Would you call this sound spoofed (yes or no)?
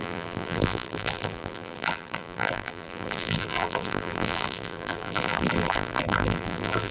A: yes